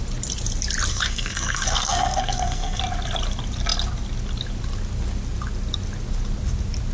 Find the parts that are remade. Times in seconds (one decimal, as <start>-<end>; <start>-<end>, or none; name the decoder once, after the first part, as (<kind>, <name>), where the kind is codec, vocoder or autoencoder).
0.9-2.8 (codec, SNAC)